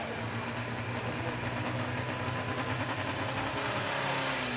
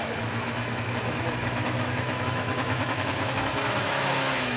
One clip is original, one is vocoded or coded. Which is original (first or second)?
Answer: first